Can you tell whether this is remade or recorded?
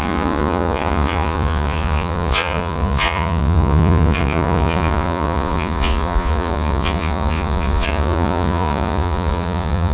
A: remade